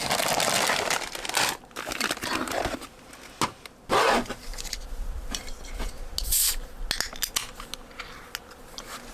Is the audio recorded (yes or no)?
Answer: yes